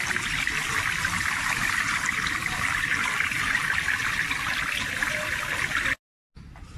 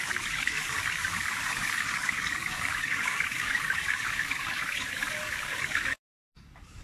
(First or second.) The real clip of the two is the first